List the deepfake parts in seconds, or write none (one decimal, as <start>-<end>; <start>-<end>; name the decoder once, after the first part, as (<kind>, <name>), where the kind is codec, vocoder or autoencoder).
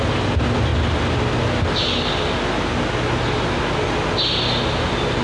none